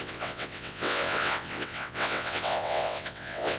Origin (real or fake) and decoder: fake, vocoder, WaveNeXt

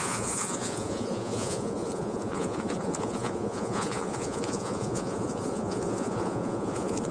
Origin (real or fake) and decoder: fake, vocoder, Vocos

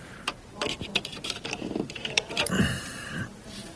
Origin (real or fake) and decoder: fake, vocoder, BigVGAN v2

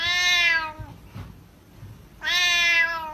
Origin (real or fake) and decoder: real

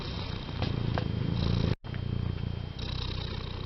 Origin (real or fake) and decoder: real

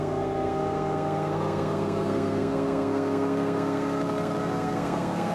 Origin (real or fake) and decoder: fake, codec, SNAC